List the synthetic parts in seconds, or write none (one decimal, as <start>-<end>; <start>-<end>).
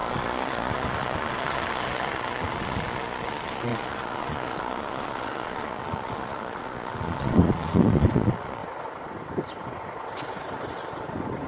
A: 0.0-8.6